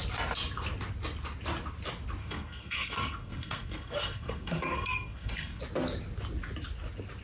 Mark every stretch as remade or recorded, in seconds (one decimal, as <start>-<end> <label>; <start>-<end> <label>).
0.0-2.2 recorded; 2.2-5.6 remade; 5.6-7.2 recorded